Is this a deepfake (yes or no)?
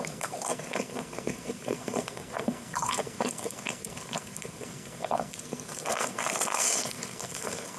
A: yes